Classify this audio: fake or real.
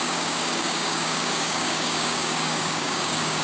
fake